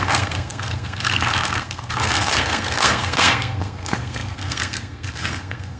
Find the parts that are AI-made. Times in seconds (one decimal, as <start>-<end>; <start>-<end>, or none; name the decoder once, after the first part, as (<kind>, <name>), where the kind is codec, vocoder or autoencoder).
0.0-5.8 (codec, SNAC)